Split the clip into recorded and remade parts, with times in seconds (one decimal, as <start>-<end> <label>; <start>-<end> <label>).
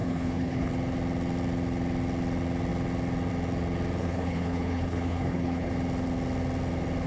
0.0-0.7 remade; 0.7-4.0 recorded; 4.0-5.7 remade; 5.7-7.1 recorded